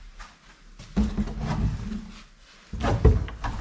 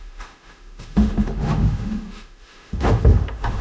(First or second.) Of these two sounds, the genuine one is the first